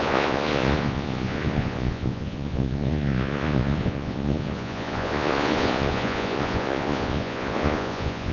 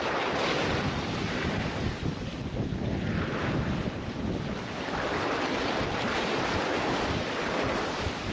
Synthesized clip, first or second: first